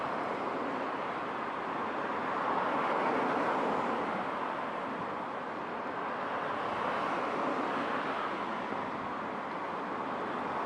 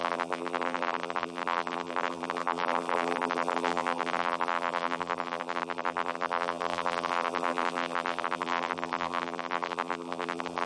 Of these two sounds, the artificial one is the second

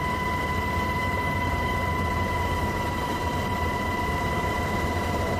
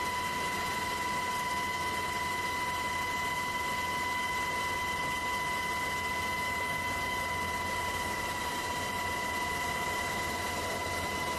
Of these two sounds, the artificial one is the first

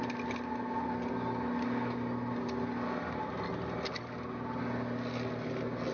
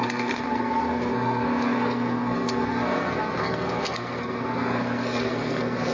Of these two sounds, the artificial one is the second